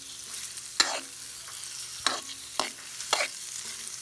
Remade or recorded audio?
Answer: recorded